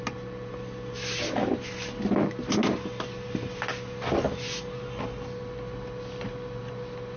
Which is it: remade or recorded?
recorded